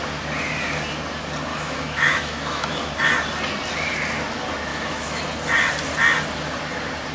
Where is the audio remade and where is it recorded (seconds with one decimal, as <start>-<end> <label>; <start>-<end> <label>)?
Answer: 0.0-1.5 recorded; 1.5-2.9 remade; 2.9-4.7 recorded; 4.7-5.2 remade; 5.2-7.1 recorded